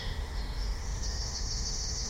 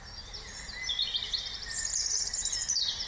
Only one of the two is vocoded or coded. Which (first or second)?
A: first